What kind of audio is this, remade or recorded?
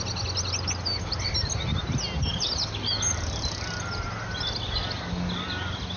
recorded